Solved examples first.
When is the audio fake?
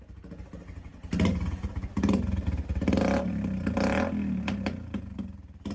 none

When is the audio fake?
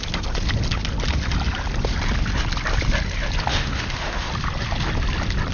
3.5-4.3 (autoencoder, DAC-VAE)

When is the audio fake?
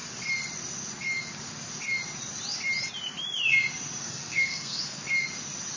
4.0-4.8 (codec, SNAC)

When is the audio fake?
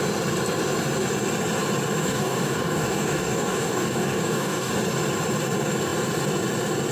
2.0-4.7 (codec, DAC)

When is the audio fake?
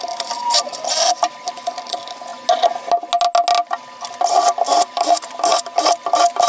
none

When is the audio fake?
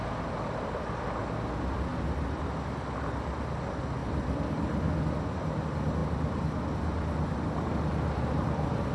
1.9-2.4 (vocoder, BigVGAN v2); 4.0-5.6; 6.0-8.9